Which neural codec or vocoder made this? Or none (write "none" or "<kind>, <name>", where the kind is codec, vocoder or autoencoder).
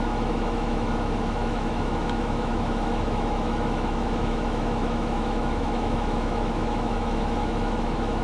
autoencoder, DAC-VAE